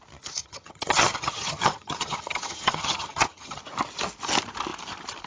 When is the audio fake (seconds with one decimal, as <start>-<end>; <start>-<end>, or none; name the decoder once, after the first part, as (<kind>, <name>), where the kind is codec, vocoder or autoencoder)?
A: 0.4-3.6 (vocoder, HiFi-GAN)